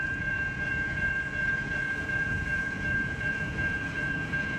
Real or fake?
fake